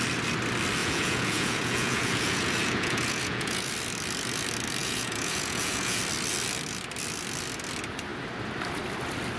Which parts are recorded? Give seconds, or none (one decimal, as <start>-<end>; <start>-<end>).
0.0-0.8; 3.7-4.8; 6.0-9.4